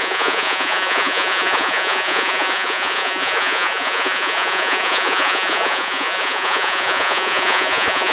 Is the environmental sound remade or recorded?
remade